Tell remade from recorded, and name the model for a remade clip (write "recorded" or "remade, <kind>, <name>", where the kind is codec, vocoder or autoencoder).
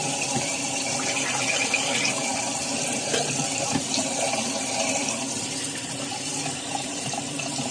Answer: remade, vocoder, BigVGAN v2